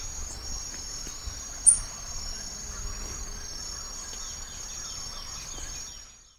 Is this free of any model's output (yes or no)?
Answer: yes